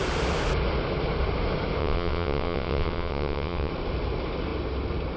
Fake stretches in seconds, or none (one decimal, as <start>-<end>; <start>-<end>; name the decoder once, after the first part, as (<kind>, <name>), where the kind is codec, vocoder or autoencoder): 1.8-3.7 (vocoder, WaveNeXt)